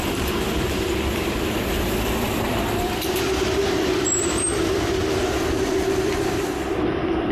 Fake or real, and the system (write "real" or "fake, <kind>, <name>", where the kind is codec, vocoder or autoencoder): fake, vocoder, BigVGAN v2